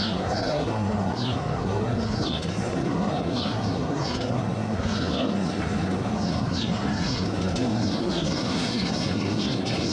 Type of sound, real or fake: fake